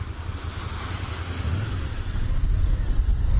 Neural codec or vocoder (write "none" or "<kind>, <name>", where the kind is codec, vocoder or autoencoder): none